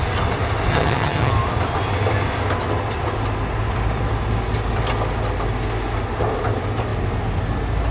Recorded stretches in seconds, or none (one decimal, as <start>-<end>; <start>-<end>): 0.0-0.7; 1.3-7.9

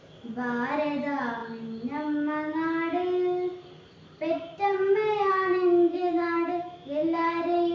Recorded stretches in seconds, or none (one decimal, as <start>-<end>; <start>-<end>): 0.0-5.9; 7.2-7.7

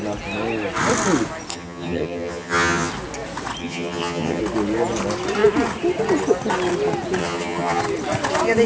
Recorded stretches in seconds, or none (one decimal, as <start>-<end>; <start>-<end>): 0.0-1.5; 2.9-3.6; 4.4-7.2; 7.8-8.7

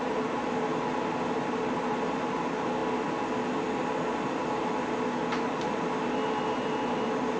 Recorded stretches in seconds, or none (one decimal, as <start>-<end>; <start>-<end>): 0.0-7.4

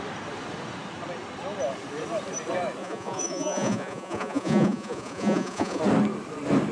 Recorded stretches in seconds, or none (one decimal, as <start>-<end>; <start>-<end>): 0.0-2.8; 5.8-6.7